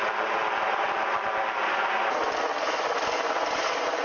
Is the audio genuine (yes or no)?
yes